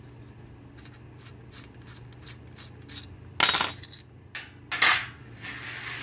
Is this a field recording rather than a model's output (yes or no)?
yes